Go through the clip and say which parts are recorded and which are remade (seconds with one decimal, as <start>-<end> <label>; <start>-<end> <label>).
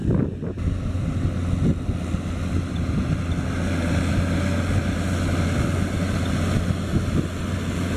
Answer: 0.0-8.0 recorded